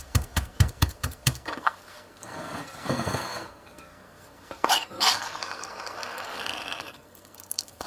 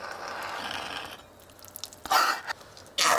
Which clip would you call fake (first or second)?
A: first